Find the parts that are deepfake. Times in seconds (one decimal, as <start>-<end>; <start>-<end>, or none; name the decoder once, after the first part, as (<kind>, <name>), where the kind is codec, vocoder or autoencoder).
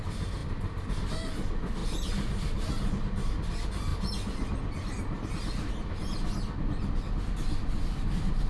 none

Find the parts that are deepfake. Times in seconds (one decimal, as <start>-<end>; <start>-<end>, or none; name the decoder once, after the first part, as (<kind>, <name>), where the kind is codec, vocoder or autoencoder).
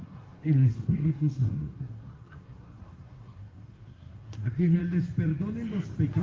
0.0-4.8 (codec, SNAC)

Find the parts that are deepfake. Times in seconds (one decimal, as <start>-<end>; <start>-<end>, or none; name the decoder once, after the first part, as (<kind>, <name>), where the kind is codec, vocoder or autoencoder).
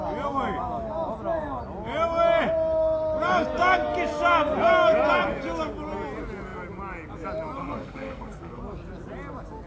7.6-8.6 (codec, SNAC)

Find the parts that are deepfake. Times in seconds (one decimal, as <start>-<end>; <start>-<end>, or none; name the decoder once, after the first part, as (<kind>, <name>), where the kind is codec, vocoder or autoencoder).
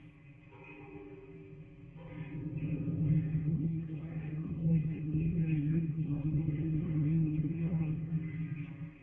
3.3-8.1 (codec, SNAC)